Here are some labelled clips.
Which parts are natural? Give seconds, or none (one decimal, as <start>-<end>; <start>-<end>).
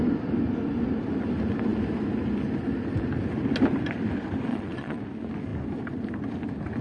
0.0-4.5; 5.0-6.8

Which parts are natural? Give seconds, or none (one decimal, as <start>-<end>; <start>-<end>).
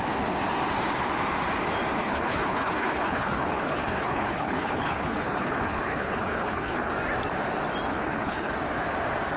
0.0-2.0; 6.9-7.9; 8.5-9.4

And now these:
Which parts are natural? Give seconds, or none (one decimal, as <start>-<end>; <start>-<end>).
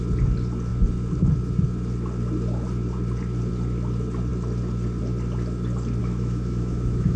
0.0-6.0